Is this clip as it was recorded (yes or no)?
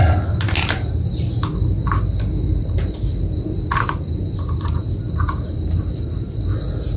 yes